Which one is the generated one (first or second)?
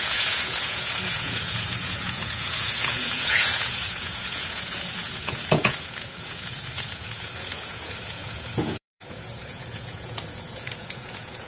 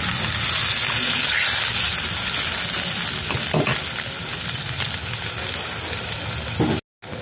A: first